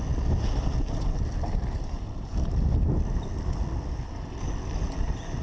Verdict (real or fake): real